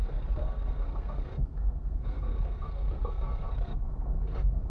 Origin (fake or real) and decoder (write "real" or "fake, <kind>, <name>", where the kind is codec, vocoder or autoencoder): fake, codec, SNAC